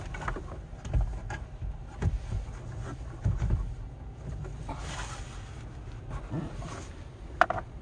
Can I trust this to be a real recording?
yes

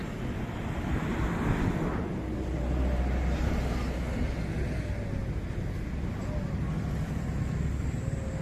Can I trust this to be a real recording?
yes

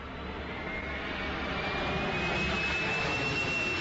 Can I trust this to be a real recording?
yes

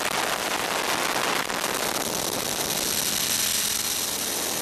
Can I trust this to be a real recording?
yes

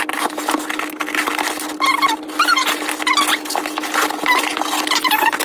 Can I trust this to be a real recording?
yes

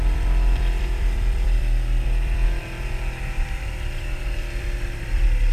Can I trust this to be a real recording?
no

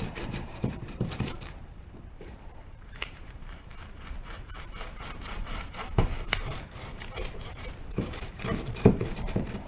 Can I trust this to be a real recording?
no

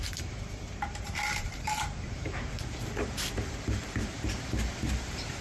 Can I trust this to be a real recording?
no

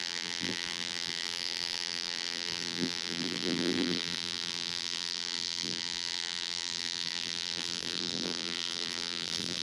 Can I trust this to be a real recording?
no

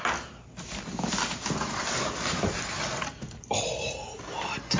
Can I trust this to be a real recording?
yes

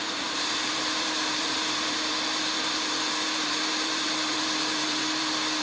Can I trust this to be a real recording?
no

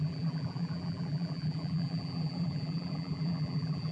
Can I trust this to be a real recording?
no